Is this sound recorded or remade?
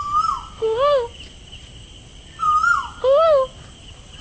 recorded